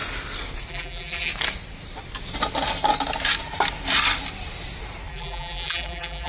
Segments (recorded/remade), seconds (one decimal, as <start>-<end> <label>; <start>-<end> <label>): 0.0-0.7 recorded; 0.7-1.3 remade; 1.3-5.1 recorded; 5.1-6.3 remade